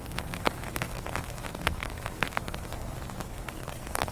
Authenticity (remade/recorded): remade